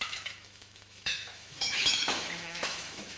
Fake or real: fake